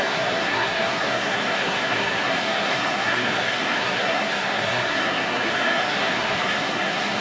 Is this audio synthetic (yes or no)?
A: yes